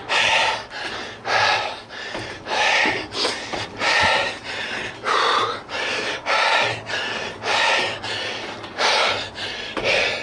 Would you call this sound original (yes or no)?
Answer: yes